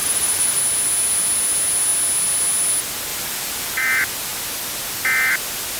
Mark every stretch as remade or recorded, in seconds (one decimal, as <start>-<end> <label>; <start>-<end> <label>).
0.0-0.6 remade; 0.6-3.1 recorded; 3.1-3.9 remade; 3.9-5.8 recorded